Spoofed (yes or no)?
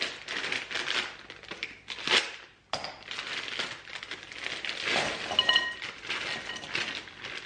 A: no